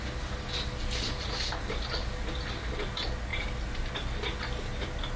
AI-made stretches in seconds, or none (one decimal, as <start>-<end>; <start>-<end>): 2.0-2.5; 3.3-3.9